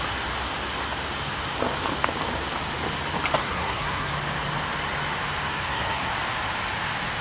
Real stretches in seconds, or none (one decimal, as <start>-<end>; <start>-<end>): 0.0-3.4; 4.1-5.5; 6.1-7.2